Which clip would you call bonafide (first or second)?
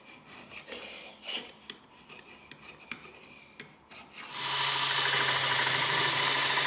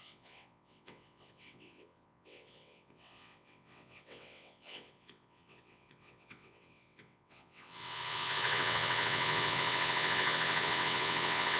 first